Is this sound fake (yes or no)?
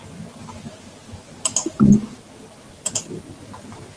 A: no